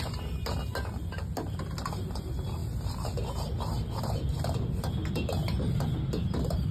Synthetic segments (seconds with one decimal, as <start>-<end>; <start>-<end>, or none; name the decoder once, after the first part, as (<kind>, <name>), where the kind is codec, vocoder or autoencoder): none